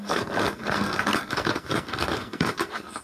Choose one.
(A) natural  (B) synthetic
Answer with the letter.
B